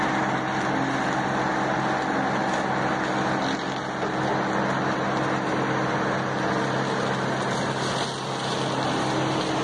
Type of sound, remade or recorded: recorded